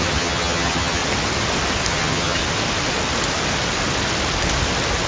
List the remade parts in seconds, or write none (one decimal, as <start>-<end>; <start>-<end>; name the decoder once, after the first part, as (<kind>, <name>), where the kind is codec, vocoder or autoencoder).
0.0-1.0 (vocoder, HiFi-GAN); 1.9-2.4

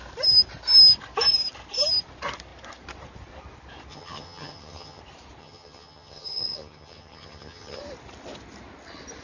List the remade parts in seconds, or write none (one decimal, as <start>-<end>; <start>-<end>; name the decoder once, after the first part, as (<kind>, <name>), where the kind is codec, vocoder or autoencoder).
3.9-5.0 (vocoder, HiFi-GAN); 5.4-7.8

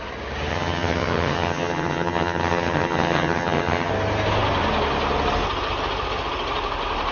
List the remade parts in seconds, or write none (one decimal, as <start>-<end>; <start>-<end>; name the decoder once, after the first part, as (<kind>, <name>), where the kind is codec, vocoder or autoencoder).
0.5-3.9 (vocoder, HiFi-GAN)

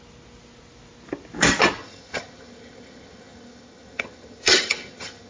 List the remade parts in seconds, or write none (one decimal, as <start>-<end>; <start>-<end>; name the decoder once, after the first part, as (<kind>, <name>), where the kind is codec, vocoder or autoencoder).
1.8-5.3 (vocoder, HiFi-GAN)

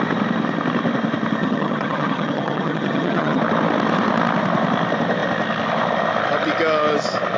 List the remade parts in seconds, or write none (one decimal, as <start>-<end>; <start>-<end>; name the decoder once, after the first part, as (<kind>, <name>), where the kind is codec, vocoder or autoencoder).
1.4-3.4 (vocoder, HiFi-GAN)

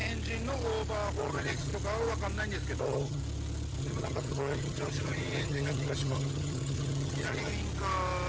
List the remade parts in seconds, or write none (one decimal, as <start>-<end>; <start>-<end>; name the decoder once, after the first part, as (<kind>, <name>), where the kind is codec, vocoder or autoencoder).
1.2-1.7 (vocoder, HiFi-GAN); 2.8-3.2; 3.8-7.5

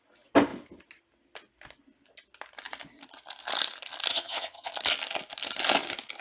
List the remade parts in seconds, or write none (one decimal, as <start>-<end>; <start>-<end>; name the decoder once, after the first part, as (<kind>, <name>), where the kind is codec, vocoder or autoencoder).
4.1-4.7 (vocoder, HiFi-GAN)

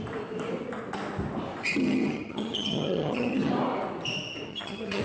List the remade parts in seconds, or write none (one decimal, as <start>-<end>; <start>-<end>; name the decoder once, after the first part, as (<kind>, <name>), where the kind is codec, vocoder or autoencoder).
1.8-3.5 (vocoder, HiFi-GAN); 4.5-5.0